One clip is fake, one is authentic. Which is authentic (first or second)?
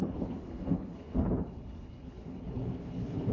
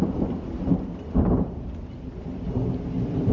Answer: second